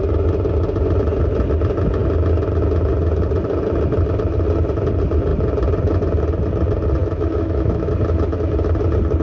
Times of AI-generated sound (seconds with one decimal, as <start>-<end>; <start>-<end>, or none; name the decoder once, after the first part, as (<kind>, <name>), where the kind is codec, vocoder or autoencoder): 7.0-7.9 (autoencoder, DAC-VAE)